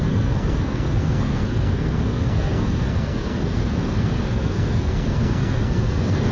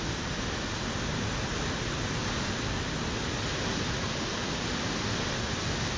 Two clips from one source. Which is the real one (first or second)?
second